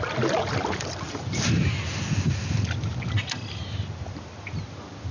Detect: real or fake real